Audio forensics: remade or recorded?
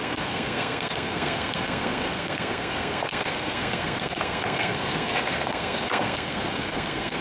remade